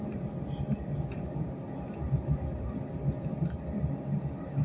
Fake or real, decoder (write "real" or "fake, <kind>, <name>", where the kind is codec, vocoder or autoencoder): real